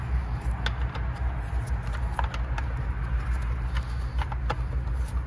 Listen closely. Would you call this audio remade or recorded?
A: recorded